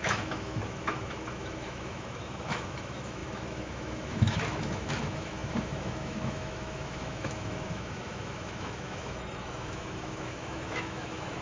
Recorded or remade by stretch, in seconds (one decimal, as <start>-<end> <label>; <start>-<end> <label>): 0.0-11.4 remade

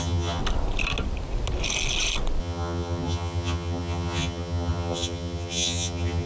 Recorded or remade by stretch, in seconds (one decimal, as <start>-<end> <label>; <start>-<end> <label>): 0.0-0.4 remade; 0.4-2.4 recorded; 2.4-6.3 remade

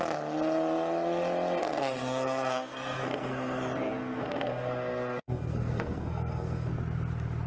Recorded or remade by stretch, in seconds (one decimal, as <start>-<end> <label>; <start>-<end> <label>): 0.0-1.6 recorded; 1.6-3.6 remade; 3.6-4.0 recorded; 4.0-6.7 remade; 6.7-7.5 recorded

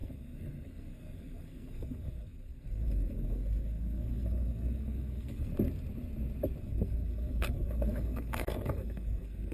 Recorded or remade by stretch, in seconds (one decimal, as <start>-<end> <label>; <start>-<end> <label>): 0.0-5.5 remade; 5.5-6.6 recorded; 6.6-9.5 remade

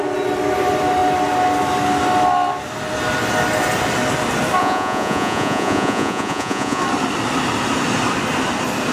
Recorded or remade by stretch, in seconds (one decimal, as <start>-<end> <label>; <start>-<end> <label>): 0.0-4.6 recorded; 4.6-6.8 remade; 6.8-8.9 recorded